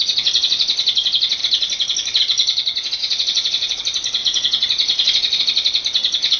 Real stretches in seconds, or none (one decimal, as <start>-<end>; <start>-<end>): 0.0-3.0; 3.8-4.2; 5.4-6.4